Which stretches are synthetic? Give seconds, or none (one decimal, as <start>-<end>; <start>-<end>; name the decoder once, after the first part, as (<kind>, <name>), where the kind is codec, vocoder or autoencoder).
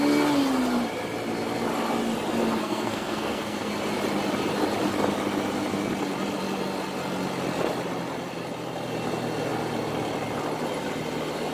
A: 2.6-3.7 (codec, SNAC)